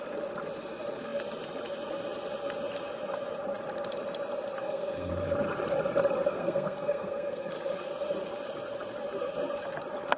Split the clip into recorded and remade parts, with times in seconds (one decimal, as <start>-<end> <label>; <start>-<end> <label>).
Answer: 0.0-4.6 recorded; 4.6-5.1 remade; 5.1-6.3 recorded; 6.3-7.5 remade; 7.5-10.2 recorded